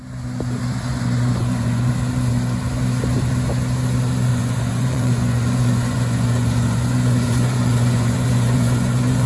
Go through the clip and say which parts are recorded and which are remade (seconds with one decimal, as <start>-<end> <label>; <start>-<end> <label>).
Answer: 0.0-0.9 recorded; 0.9-1.9 remade; 1.9-4.3 recorded; 4.3-9.3 remade